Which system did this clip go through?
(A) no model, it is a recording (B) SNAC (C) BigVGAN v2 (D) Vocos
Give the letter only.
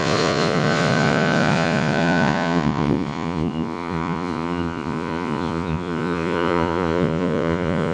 D